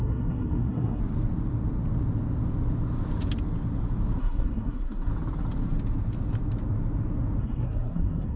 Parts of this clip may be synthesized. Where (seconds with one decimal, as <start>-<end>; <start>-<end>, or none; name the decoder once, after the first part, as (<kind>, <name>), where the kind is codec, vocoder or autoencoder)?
0.0-1.0 (codec, SNAC); 4.2-5.1; 7.4-8.4